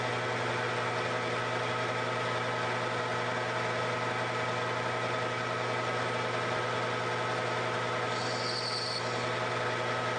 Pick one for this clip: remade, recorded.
recorded